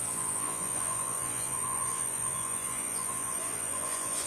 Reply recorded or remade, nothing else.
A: remade